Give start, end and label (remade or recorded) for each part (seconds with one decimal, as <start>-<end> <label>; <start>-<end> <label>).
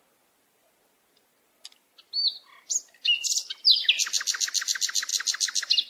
0.0-5.9 recorded